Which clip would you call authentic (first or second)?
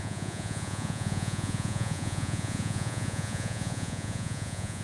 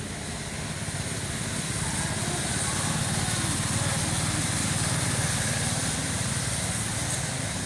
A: second